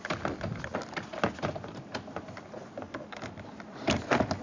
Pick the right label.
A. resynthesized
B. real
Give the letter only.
B